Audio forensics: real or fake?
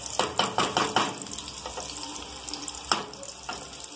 real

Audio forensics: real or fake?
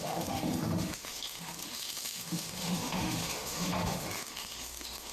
fake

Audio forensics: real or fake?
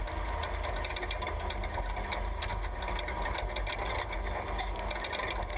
real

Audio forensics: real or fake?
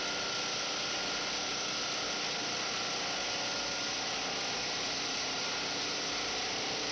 real